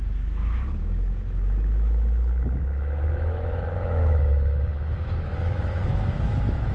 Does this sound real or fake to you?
fake